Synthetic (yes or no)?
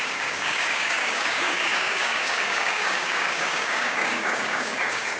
yes